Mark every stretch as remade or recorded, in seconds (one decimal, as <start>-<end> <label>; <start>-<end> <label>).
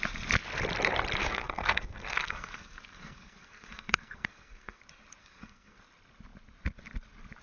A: 0.0-1.2 recorded; 1.2-4.8 remade; 4.8-5.2 recorded; 5.2-5.8 remade; 5.8-7.4 recorded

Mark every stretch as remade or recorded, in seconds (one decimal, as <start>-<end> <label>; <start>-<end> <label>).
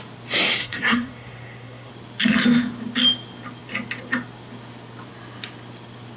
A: 0.0-0.6 recorded; 0.6-1.9 remade; 1.9-6.2 recorded